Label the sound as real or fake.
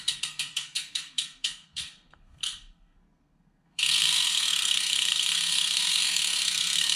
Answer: fake